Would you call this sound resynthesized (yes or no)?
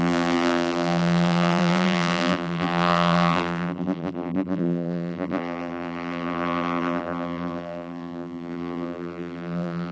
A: yes